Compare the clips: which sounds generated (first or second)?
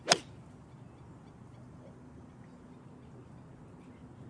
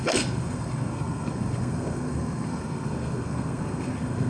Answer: second